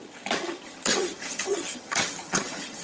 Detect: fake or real fake